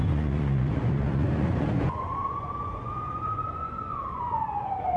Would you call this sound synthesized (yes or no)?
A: yes